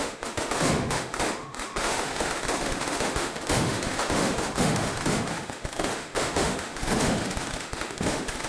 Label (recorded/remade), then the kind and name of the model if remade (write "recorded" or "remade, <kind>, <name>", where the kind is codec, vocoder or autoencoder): remade, autoencoder, DAC-VAE